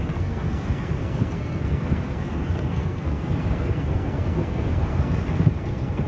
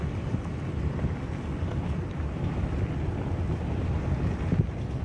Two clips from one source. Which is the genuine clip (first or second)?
second